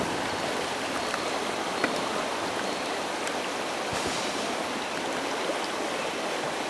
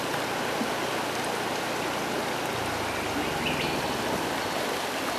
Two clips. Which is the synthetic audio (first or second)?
first